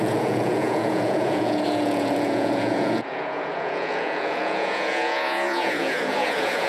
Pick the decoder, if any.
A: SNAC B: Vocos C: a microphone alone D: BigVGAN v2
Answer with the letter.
B